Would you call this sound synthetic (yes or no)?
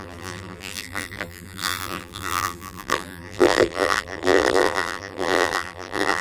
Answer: yes